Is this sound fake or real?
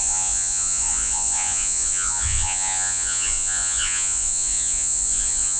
fake